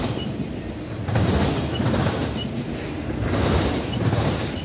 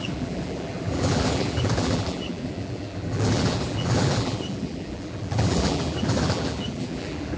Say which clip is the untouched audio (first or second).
first